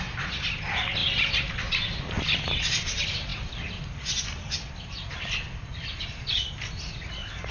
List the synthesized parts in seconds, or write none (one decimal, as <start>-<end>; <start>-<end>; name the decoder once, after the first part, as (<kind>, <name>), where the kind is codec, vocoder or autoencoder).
none